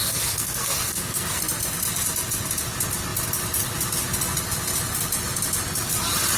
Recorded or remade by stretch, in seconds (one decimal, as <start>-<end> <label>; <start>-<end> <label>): 0.0-1.4 remade; 1.4-6.4 recorded